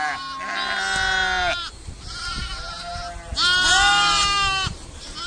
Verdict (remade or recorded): recorded